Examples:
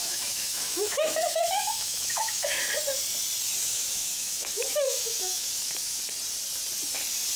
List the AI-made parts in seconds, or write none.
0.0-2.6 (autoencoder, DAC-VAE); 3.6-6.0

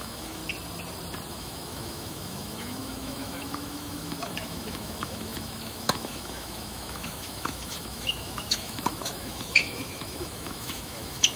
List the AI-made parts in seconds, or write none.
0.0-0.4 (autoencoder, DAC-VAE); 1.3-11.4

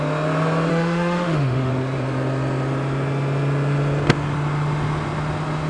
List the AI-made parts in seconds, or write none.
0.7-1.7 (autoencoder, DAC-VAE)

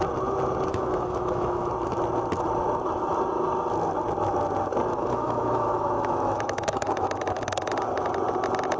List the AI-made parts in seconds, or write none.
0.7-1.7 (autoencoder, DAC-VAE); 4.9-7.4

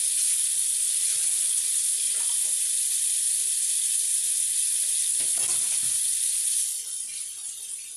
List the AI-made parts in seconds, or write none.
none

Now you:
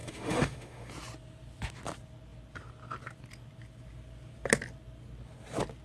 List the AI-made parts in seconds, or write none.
0.0-0.9 (autoencoder, DAC-VAE)